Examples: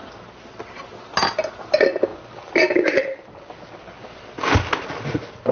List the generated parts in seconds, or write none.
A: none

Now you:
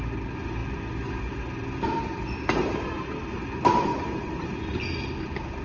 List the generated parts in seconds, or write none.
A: none

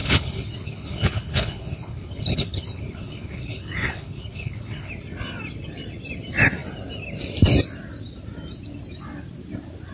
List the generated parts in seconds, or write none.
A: 0.0-4.9 (codec, HILCodec)

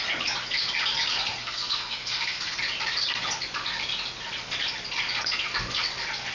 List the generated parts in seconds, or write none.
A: 1.4-2.6 (codec, SNAC)

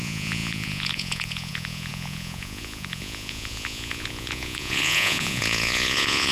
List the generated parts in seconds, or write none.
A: 0.0-6.3 (vocoder, Vocos)